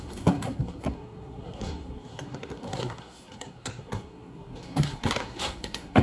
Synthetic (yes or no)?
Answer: yes